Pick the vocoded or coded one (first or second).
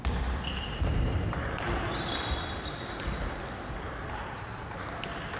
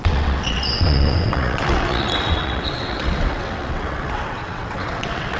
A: second